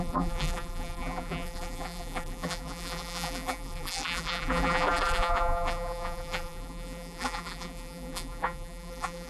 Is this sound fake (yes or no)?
yes